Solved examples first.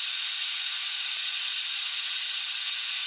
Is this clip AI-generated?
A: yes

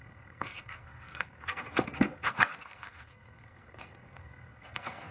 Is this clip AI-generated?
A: yes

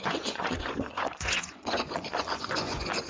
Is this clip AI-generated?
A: yes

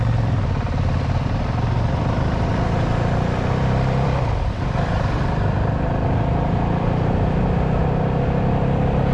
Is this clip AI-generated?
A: yes